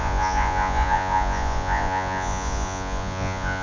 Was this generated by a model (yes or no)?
yes